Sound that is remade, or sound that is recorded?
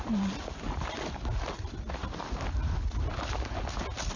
recorded